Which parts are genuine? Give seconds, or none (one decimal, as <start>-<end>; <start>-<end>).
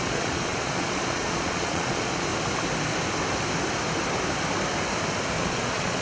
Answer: 2.3-5.4